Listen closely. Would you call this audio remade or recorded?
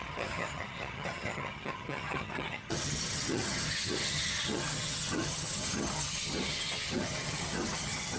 remade